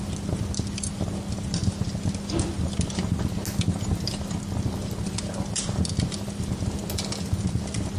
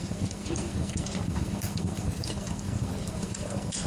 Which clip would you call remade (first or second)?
second